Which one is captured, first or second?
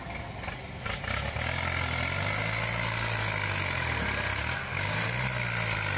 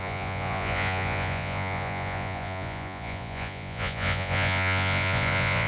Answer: first